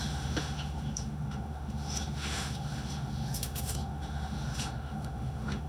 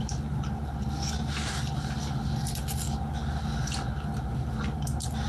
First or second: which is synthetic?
first